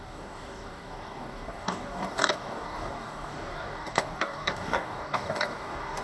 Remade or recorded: remade